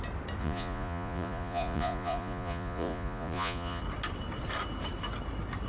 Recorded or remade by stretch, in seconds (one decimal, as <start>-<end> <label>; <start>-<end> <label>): 0.0-0.4 recorded; 0.4-3.8 remade; 3.8-5.7 recorded